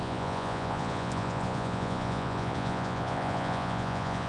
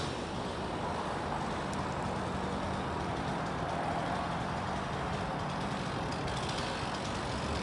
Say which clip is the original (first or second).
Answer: second